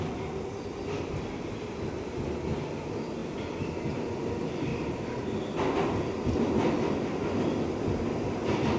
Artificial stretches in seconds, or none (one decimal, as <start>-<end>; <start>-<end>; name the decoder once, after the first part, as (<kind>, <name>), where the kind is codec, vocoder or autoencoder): 4.7-5.4 (vocoder, BigVGAN v2)